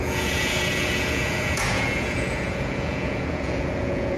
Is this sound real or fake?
fake